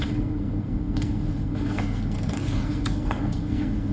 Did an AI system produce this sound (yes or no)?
yes